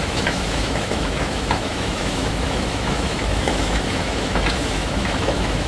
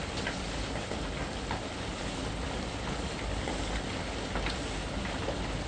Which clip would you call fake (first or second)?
first